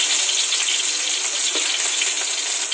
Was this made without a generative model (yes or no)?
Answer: yes